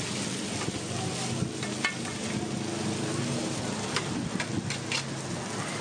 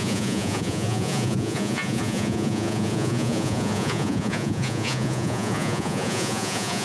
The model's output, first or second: second